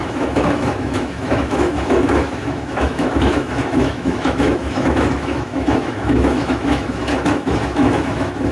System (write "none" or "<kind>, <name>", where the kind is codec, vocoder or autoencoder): autoencoder, DAC-VAE